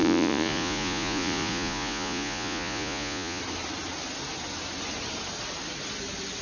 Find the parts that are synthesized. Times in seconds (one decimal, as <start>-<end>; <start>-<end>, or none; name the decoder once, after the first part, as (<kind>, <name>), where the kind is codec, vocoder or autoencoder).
0.0-3.4 (vocoder, Vocos)